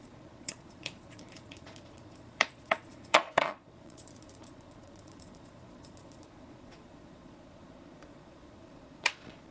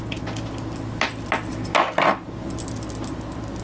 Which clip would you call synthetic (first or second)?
first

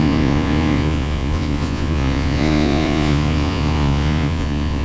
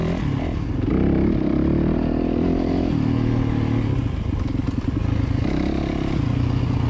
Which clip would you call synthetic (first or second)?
first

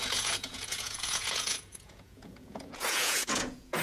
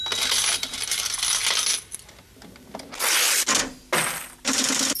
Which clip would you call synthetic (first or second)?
first